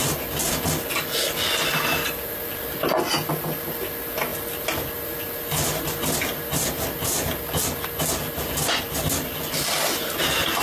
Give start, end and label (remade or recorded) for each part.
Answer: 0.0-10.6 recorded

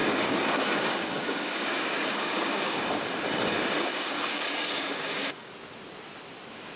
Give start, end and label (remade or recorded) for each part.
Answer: 0.0-3.1 remade; 3.1-3.9 recorded; 3.9-5.5 remade; 5.5-6.8 recorded

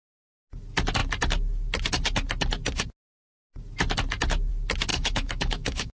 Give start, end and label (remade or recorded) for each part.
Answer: 0.0-4.9 recorded; 4.9-5.9 remade

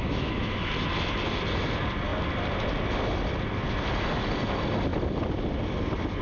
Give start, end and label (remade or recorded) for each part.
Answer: 0.0-0.7 remade; 0.7-6.2 recorded

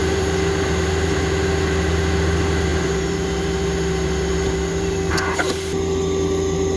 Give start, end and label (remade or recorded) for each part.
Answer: 0.0-6.8 recorded

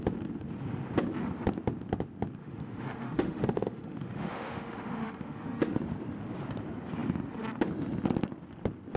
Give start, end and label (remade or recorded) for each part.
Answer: 0.0-2.4 recorded; 2.4-5.8 remade; 5.8-9.0 recorded

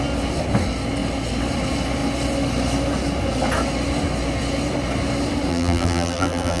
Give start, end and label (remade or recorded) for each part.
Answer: 0.0-5.5 recorded; 5.5-6.6 remade

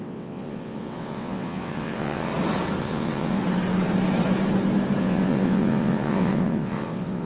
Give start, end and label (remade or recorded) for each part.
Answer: 0.0-2.3 remade; 2.3-2.8 recorded; 2.8-3.4 remade; 3.4-5.0 recorded; 5.0-7.3 remade